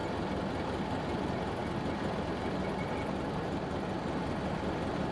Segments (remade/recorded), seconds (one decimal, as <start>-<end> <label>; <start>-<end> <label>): 0.0-5.1 recorded